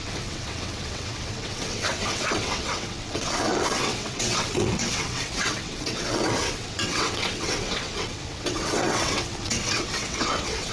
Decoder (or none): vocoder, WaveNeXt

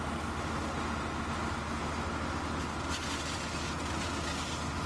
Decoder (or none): none